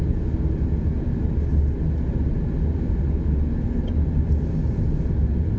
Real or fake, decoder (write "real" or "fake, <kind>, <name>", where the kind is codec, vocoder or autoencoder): real